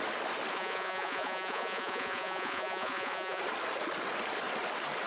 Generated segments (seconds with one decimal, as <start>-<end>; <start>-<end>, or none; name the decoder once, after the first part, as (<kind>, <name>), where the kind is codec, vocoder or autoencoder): 0.5-3.4 (vocoder, Vocos)